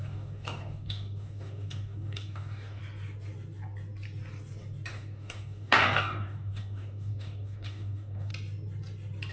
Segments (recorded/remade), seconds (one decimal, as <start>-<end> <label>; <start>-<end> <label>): 0.0-2.8 remade; 2.8-4.9 recorded; 4.9-8.3 remade; 8.3-9.3 recorded